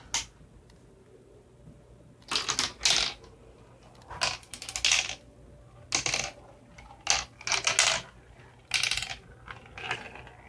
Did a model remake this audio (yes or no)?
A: no